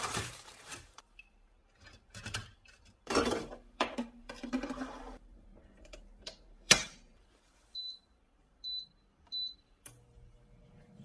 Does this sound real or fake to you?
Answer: fake